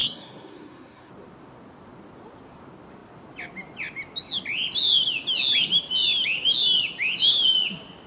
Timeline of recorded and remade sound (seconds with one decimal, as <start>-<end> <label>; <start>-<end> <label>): 0.0-1.1 remade; 1.1-8.1 recorded